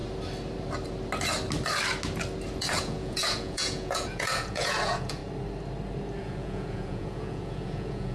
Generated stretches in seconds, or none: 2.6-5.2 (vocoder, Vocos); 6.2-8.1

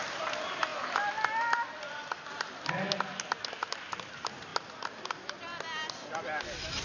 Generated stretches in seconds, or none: none